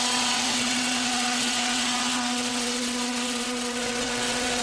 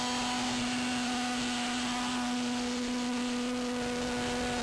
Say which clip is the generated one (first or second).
first